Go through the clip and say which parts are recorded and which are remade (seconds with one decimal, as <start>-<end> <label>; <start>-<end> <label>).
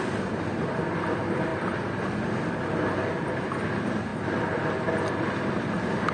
0.0-6.1 recorded